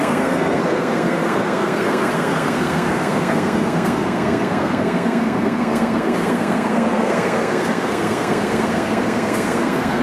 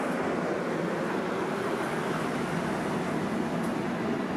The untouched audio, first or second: second